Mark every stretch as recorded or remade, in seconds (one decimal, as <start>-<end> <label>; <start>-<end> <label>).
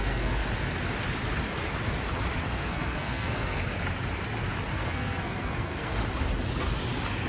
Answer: 0.0-0.4 remade; 0.4-2.4 recorded; 2.4-3.6 remade; 3.6-4.7 recorded; 4.7-5.9 remade; 5.9-7.3 recorded